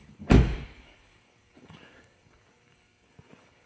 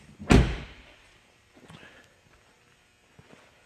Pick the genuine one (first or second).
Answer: second